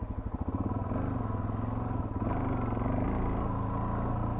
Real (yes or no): yes